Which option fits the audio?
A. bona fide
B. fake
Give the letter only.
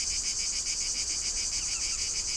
A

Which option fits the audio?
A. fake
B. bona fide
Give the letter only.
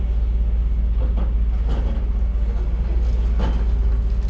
B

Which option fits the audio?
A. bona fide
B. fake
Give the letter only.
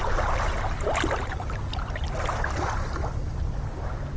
A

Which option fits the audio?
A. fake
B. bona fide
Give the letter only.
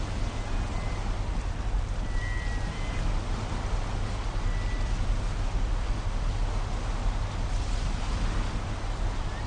B